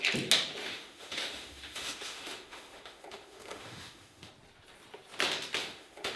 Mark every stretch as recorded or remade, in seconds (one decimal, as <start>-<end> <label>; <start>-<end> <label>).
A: 0.0-0.6 recorded; 0.6-4.3 remade; 4.3-5.6 recorded; 5.6-6.2 remade